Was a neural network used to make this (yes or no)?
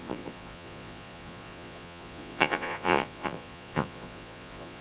yes